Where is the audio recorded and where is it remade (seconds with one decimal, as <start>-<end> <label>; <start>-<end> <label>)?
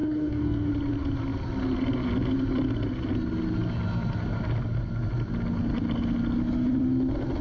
0.0-0.7 remade; 0.7-7.4 recorded